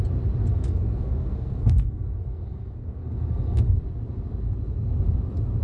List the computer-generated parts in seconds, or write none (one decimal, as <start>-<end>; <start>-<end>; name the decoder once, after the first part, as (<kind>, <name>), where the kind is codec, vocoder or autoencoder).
0.4-3.8 (codec, SNAC)